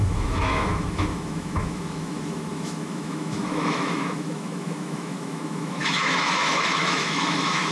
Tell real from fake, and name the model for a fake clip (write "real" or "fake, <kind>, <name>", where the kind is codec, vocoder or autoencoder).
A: fake, autoencoder, DAC-VAE